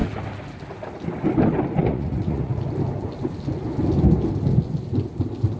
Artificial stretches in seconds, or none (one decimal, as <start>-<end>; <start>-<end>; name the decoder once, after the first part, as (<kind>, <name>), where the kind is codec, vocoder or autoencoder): 1.8-2.7 (vocoder, Vocos)

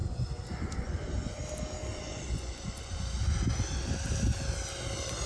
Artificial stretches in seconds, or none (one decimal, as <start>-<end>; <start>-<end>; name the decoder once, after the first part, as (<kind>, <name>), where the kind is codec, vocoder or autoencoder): 0.0-1.4 (vocoder, Vocos); 1.9-3.1

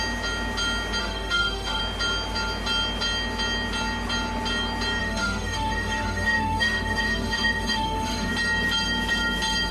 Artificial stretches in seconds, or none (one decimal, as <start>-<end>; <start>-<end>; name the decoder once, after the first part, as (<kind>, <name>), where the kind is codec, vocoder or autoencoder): 1.0-1.8 (autoencoder, DAC-VAE); 5.0-8.3

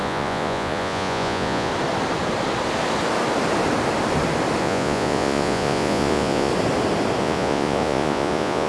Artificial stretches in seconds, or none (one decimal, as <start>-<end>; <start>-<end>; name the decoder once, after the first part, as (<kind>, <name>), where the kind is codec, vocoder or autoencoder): 0.0-1.7 (vocoder, Vocos); 4.6-6.5; 7.2-8.7

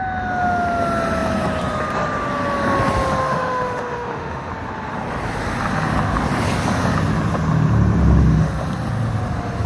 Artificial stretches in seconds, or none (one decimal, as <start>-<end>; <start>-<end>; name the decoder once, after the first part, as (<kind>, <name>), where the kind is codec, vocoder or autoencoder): 3.2-4.5 (autoencoder, DAC-VAE)

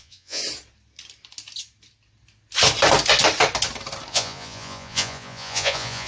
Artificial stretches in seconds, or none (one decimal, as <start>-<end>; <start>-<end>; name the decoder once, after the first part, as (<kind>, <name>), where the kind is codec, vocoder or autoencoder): 0.0-0.4 (vocoder, Vocos); 4.1-6.1

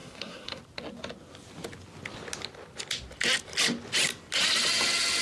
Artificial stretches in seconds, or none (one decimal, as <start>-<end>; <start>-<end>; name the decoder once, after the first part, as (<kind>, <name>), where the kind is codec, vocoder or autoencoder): 0.0-0.6 (codec, SNAC)